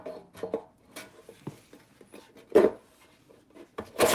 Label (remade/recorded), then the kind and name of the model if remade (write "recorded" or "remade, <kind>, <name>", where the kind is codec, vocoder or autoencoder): recorded